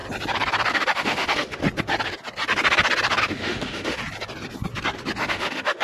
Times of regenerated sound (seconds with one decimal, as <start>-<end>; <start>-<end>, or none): 0.7-1.6; 3.2-4.0; 5.2-5.8